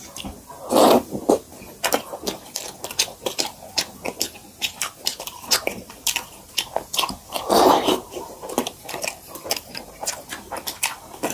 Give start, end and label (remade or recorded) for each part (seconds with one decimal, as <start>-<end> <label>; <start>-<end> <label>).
0.0-5.1 recorded; 5.1-10.2 remade; 10.2-11.3 recorded